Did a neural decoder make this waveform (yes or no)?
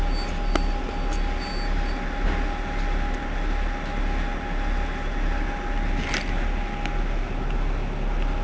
no